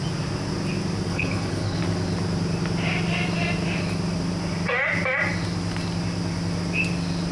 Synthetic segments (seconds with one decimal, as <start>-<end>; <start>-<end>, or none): 1.1-1.8